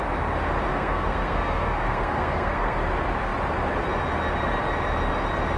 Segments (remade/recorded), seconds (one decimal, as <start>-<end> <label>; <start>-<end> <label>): 0.0-0.7 recorded; 0.7-2.9 remade; 2.9-5.6 recorded

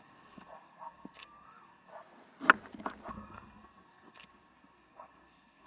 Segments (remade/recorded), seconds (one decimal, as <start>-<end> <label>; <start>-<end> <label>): 0.0-1.9 remade; 1.9-3.1 recorded; 3.1-5.7 remade

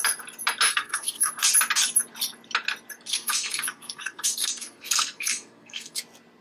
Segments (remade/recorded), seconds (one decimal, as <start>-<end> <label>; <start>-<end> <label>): 0.0-0.7 recorded; 0.7-1.3 remade; 1.3-3.1 recorded; 3.1-6.0 remade; 6.0-6.4 recorded

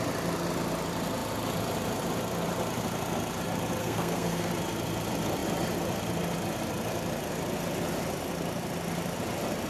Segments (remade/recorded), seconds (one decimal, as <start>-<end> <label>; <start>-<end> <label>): 0.0-3.8 recorded; 3.8-4.5 remade; 4.5-9.7 recorded

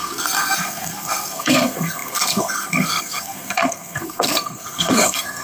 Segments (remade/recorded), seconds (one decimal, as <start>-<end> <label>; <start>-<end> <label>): 0.0-5.4 remade